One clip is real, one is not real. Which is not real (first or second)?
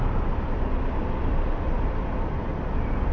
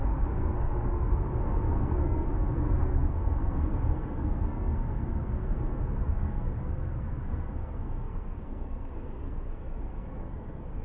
second